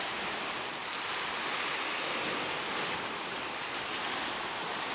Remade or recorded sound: recorded